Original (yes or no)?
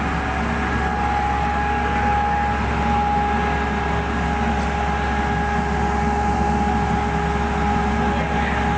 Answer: yes